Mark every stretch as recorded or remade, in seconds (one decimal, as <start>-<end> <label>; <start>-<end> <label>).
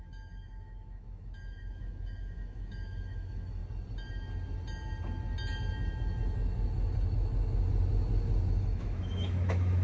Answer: 0.0-3.6 remade; 3.6-8.6 recorded; 8.6-9.8 remade